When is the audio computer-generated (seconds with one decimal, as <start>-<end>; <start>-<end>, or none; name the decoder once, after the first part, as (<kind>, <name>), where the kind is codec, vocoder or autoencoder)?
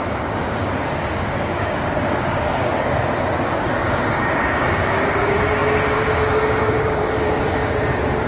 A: 0.0-8.3 (codec, DAC)